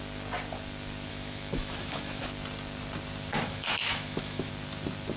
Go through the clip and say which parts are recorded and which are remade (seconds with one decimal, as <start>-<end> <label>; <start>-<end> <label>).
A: 0.0-1.1 recorded; 1.1-2.2 remade; 2.2-3.3 recorded; 3.3-4.5 remade; 4.5-5.2 recorded